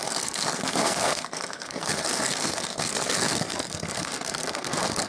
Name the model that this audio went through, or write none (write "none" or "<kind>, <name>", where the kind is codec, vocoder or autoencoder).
codec, SNAC